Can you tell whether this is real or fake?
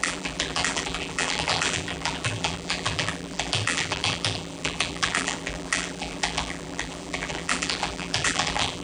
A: fake